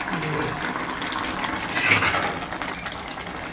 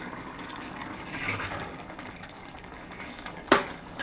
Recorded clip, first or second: first